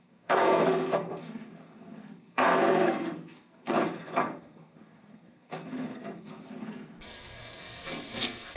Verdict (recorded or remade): remade